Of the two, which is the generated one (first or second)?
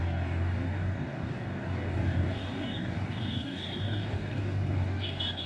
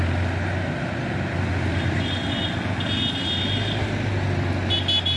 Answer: first